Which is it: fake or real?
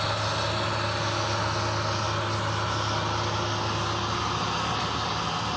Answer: real